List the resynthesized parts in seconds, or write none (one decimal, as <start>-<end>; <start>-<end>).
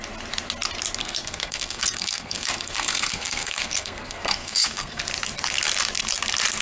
1.0-5.0